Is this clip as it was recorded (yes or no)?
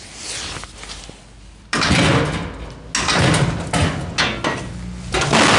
yes